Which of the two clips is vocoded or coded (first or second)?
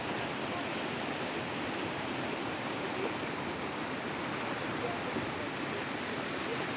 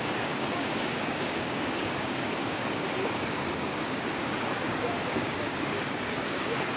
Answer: second